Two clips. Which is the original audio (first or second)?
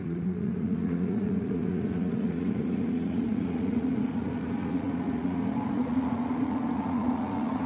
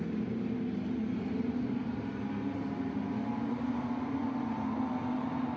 second